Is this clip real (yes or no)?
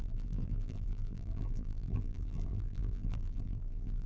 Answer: no